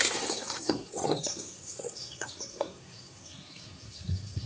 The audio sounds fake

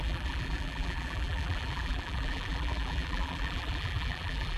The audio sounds fake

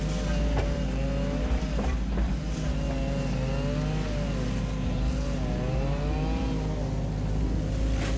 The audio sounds real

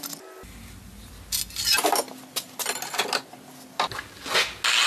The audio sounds real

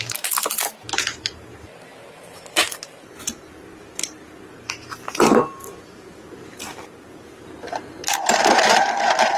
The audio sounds fake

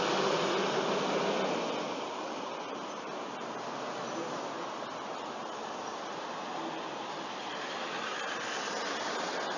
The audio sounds real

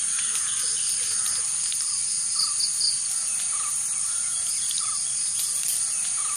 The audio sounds real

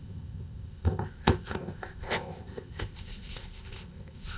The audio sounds fake